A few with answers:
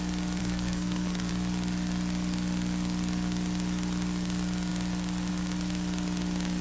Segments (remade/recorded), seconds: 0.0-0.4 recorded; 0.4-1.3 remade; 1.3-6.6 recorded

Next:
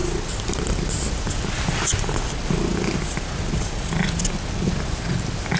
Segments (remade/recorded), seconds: 0.0-5.6 recorded